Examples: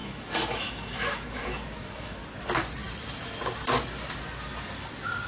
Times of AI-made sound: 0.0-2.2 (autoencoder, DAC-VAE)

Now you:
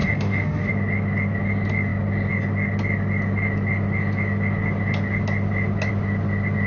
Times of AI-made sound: 0.0-0.7 (autoencoder, DAC-VAE)

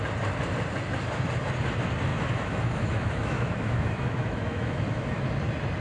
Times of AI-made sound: 2.1-5.3 (autoencoder, DAC-VAE)

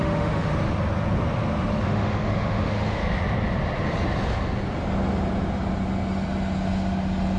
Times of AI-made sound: 0.0-0.5 (autoencoder, DAC-VAE); 1.8-3.0

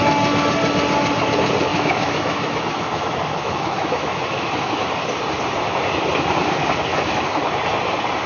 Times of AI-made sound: 1.7-4.9 (autoencoder, DAC-VAE); 6.9-7.4

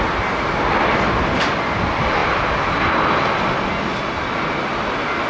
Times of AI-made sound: none

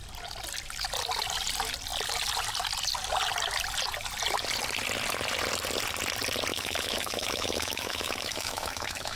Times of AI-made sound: 6.5-9.2 (autoencoder, DAC-VAE)